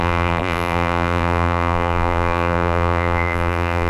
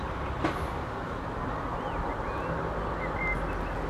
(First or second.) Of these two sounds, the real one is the second